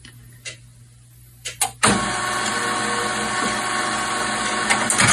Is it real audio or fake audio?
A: real